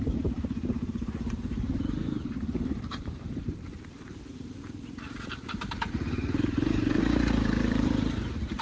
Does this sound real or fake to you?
fake